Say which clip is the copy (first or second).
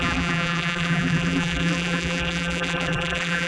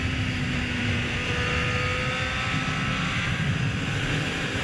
first